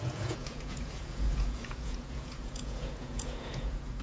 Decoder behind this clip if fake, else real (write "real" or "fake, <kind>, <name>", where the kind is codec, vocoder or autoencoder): fake, vocoder, Vocos